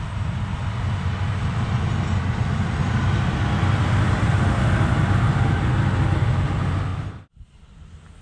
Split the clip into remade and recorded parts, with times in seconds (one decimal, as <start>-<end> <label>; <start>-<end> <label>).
0.0-8.2 recorded